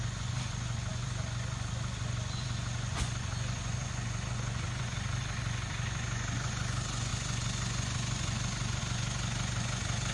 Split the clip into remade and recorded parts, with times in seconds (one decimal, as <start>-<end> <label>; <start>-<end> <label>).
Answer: 0.0-10.1 remade